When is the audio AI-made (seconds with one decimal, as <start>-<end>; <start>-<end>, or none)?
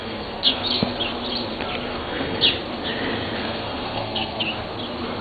0.0-0.6; 1.9-2.4; 3.4-4.4